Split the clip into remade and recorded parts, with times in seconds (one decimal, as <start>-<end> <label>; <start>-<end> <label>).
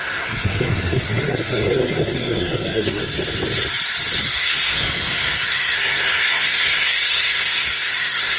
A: 0.0-3.0 remade; 3.0-4.2 recorded; 4.2-8.4 remade